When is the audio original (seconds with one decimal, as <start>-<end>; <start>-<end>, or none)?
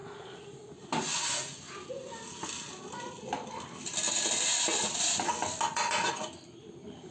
0.0-7.1